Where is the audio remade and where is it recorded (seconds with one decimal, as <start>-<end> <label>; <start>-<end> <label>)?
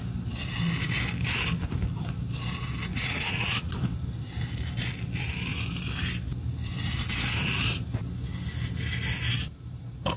0.0-2.9 recorded; 2.9-3.7 remade; 3.7-10.2 recorded